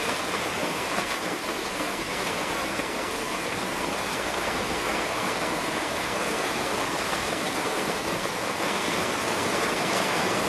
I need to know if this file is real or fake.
fake